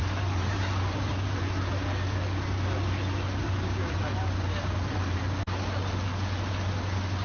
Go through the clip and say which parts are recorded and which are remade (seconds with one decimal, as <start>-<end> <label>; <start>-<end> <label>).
0.0-1.7 remade; 1.7-3.4 recorded; 3.4-5.2 remade; 5.2-7.2 recorded